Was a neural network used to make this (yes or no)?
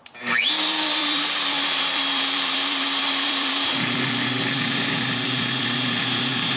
yes